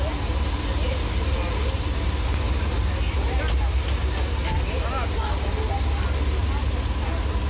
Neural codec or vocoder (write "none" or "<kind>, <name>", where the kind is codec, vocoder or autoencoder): none